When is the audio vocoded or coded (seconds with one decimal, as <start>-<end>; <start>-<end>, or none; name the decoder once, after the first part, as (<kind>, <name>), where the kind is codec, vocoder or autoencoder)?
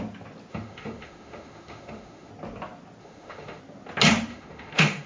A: 0.5-2.3 (autoencoder, DAC-VAE); 3.0-3.6; 4.3-5.1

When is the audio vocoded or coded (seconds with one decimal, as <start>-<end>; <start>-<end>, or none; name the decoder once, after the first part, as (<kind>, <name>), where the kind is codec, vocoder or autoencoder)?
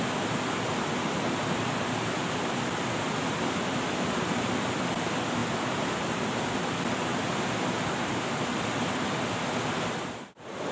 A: none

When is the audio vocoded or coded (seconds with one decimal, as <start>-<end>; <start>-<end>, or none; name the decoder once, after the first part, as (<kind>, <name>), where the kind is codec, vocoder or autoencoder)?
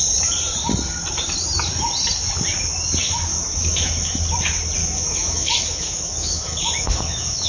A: 3.3-4.2 (autoencoder, DAC-VAE); 4.8-7.5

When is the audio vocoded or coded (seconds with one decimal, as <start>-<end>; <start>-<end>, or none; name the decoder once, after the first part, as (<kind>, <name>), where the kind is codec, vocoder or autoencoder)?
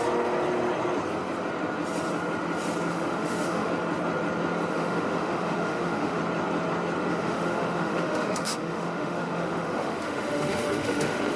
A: 2.9-3.7 (autoencoder, DAC-VAE); 4.7-6.2; 7.1-11.4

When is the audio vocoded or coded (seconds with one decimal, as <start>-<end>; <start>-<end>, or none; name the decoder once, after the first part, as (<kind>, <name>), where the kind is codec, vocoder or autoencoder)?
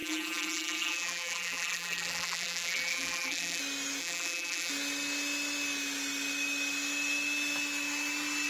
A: 0.0-3.6 (vocoder, BigVGAN v2); 4.0-4.7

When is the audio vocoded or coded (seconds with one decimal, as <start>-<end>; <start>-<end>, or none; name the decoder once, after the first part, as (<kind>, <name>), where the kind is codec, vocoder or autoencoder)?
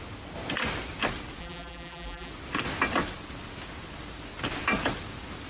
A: 1.4-2.3 (vocoder, BigVGAN v2)